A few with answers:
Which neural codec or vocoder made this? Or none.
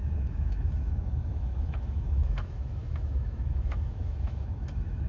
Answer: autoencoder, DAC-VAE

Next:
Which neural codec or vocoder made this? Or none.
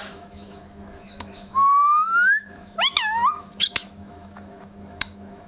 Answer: autoencoder, DAC-VAE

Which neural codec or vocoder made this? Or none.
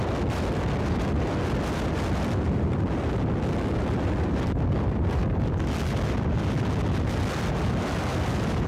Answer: none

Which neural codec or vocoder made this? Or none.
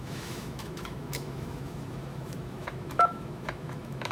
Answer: autoencoder, DAC-VAE